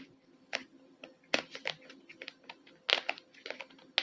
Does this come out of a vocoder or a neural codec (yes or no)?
no